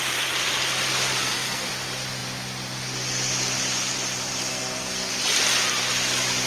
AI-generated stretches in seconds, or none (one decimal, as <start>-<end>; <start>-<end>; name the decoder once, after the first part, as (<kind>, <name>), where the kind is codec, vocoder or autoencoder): 1.2-1.7 (codec, SNAC); 4.5-5.1